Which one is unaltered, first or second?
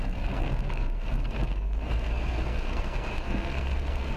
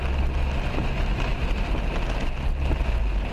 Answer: second